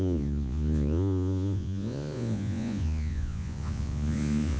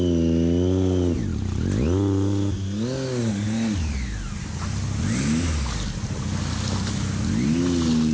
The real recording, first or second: second